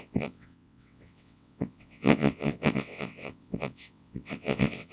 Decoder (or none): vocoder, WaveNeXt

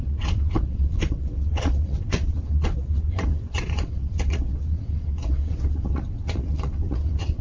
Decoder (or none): vocoder, WaveNeXt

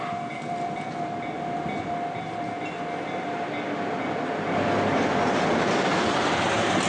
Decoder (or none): none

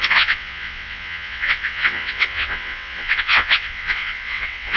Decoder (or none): vocoder, WaveNeXt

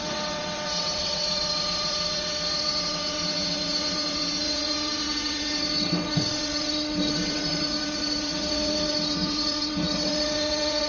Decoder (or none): vocoder, WaveNeXt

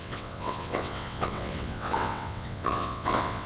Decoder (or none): vocoder, WaveNeXt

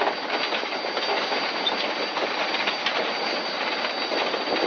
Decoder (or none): none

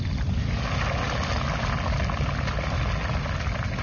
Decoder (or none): none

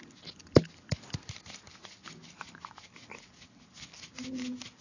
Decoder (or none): none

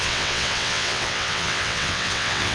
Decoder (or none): vocoder, WaveNeXt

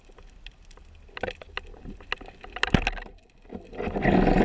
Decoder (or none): none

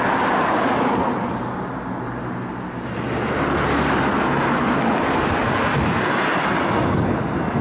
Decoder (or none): none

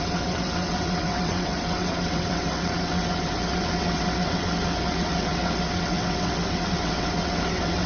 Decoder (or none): vocoder, WaveNeXt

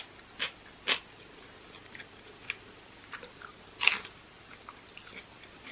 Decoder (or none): none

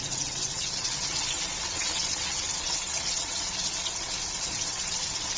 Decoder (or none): vocoder, WaveNeXt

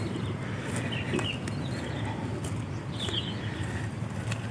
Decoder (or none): none